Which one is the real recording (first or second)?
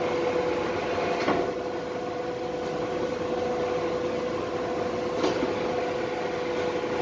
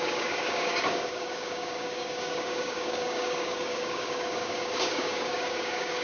first